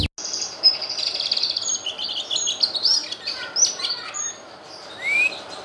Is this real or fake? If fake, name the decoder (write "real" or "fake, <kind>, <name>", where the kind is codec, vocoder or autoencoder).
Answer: real